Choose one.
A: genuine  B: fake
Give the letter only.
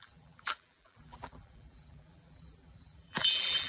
B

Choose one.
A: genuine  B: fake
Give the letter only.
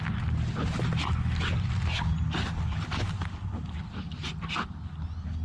A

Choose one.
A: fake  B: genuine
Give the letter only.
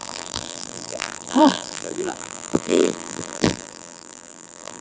A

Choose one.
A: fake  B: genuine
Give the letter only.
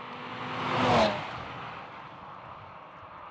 B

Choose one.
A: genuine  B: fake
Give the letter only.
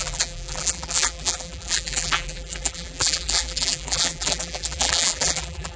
B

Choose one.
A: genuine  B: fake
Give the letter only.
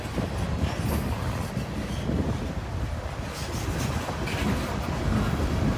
A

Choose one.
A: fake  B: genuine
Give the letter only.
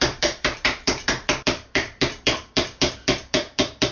A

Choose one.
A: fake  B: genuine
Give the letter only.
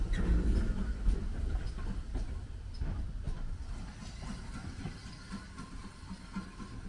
B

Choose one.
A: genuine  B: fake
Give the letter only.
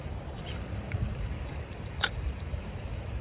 B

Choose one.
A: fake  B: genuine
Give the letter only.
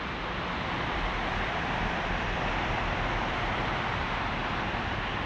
A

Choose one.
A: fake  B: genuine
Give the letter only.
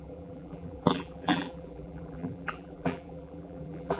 A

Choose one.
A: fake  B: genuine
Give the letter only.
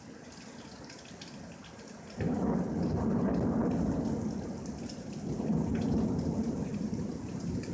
B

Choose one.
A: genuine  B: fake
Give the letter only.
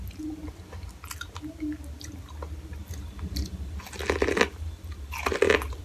A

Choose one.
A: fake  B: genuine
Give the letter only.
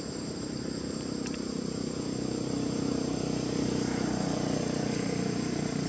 A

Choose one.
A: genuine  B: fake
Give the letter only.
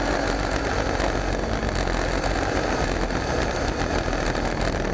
A